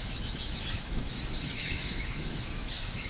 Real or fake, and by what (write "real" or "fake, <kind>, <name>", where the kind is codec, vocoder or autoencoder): fake, autoencoder, DAC-VAE